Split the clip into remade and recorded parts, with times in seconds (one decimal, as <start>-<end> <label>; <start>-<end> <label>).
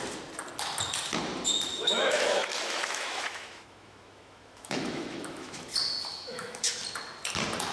0.0-1.7 recorded; 1.7-5.6 remade; 5.6-6.1 recorded; 6.1-6.8 remade; 6.8-7.7 recorded